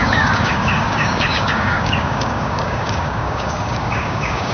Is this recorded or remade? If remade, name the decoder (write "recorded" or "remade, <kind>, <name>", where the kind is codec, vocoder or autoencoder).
remade, codec, DAC